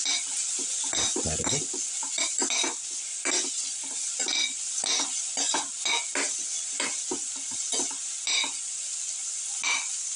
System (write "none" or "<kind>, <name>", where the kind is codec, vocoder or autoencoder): none